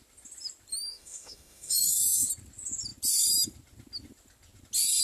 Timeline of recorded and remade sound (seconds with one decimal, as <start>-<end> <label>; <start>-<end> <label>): 0.0-0.9 recorded; 0.9-2.3 remade; 2.3-5.0 recorded

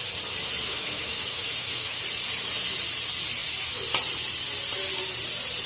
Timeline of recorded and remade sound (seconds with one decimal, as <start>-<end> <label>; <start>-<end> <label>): 0.0-0.6 recorded; 0.6-2.0 remade; 2.0-5.7 recorded

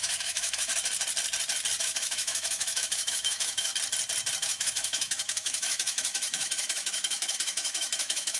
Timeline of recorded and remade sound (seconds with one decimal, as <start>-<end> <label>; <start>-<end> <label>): 0.0-0.7 remade; 0.7-1.8 recorded; 1.8-3.7 remade; 3.7-4.4 recorded; 4.4-8.4 remade